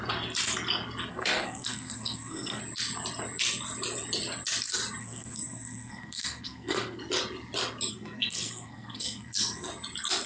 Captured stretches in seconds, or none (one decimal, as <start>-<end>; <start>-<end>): 0.0-1.1; 2.6-5.0; 7.0-7.9; 9.7-10.3